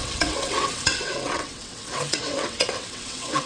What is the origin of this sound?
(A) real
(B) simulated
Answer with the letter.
B